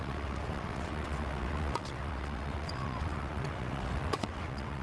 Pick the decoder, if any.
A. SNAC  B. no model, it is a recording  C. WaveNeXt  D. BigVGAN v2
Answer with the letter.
C